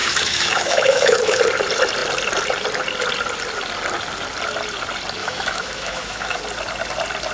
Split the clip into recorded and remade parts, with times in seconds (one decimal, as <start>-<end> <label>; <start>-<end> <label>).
0.0-1.4 remade; 1.4-5.2 recorded; 5.2-6.4 remade; 6.4-7.3 recorded

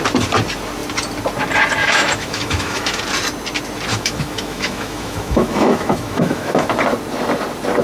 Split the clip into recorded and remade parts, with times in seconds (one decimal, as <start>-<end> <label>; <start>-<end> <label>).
0.0-1.8 recorded; 1.8-3.0 remade; 3.0-3.9 recorded; 3.9-6.7 remade; 6.7-7.8 recorded

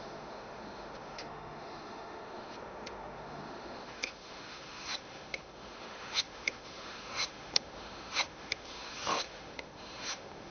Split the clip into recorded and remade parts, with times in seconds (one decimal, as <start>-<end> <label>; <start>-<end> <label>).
0.0-10.5 remade